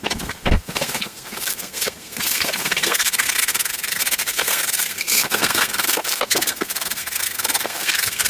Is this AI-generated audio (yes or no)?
yes